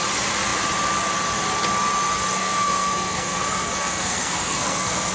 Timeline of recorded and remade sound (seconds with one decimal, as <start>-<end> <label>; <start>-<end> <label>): 0.0-2.4 recorded; 2.4-5.1 remade